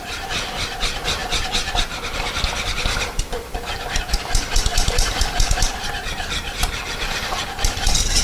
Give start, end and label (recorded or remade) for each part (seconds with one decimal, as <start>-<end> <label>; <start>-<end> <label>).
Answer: 0.0-8.2 remade